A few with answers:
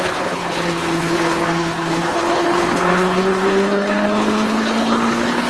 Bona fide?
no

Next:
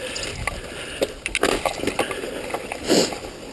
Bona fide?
yes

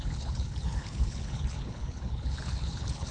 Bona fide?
no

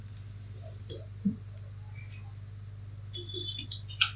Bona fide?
yes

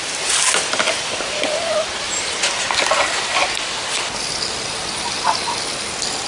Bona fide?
yes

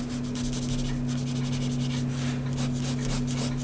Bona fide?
yes